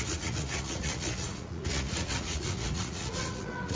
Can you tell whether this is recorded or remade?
remade